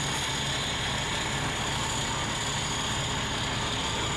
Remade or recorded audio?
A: recorded